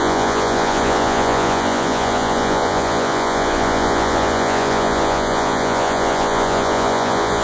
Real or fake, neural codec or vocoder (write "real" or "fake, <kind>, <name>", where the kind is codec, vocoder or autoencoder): fake, vocoder, Vocos